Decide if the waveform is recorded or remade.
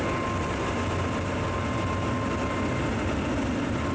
recorded